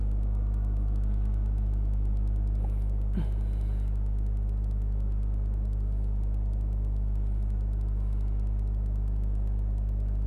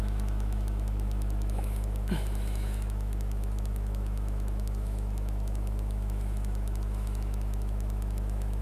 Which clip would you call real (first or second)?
first